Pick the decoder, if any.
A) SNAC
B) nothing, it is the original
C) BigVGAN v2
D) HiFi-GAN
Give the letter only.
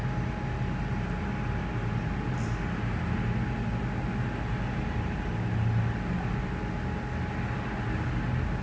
B